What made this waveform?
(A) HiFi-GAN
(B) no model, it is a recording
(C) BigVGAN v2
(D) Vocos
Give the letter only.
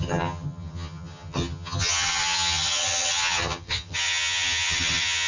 A